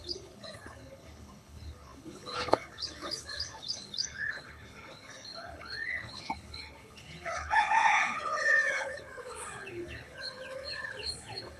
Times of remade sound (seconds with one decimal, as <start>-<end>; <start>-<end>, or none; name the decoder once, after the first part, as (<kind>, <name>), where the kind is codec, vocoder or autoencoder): 0.0-11.6 (codec, HILCodec)